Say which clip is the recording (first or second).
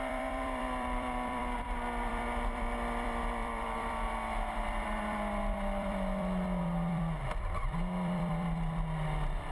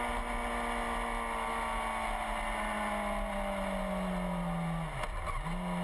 second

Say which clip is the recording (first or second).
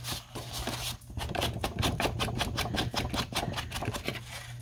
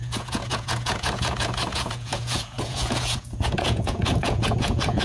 first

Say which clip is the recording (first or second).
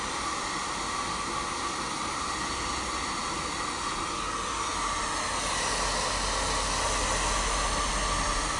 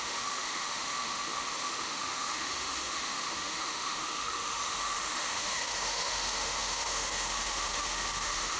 first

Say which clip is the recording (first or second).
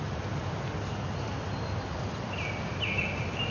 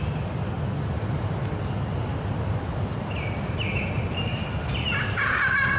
first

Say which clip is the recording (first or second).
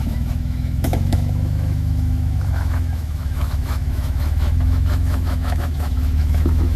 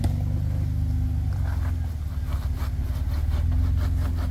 second